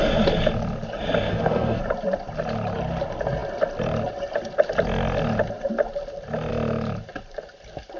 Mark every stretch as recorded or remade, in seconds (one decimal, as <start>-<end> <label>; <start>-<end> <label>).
0.0-1.3 recorded; 1.3-1.8 remade; 1.8-8.0 recorded